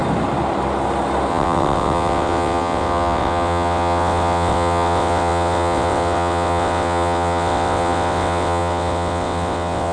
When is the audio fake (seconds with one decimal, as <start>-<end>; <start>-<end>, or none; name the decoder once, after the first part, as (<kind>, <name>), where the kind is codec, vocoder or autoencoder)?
1.3-9.9 (vocoder, WaveNeXt)